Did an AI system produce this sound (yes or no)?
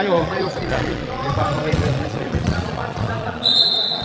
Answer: yes